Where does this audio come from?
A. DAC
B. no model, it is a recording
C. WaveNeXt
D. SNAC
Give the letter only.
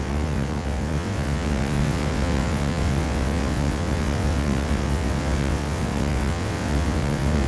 C